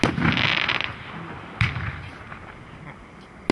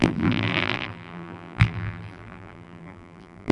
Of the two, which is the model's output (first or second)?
second